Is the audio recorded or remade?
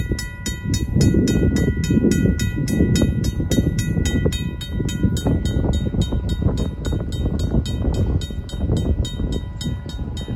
recorded